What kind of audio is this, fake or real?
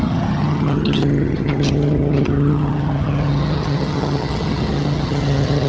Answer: fake